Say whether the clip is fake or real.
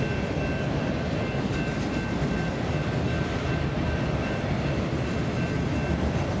real